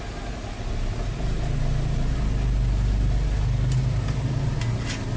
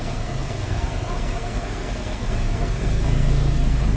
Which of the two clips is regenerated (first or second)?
second